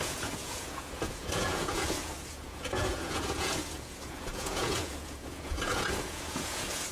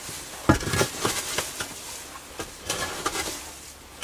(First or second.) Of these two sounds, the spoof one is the first